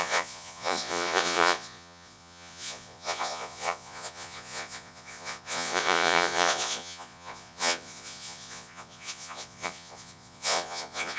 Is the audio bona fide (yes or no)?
no